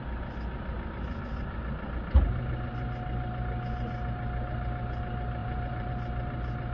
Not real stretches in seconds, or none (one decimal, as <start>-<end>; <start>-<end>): 5.4-5.9